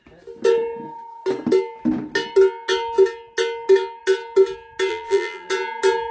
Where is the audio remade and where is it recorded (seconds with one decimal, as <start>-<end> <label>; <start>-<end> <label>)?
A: 0.0-4.9 recorded; 4.9-5.5 remade; 5.5-6.1 recorded